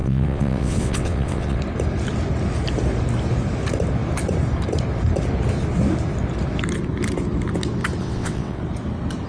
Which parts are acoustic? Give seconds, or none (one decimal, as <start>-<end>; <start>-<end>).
1.6-8.0; 8.6-9.3